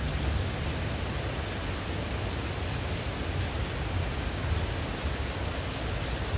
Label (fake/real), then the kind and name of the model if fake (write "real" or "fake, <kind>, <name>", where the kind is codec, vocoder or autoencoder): real